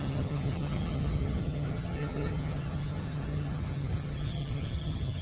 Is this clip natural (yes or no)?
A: no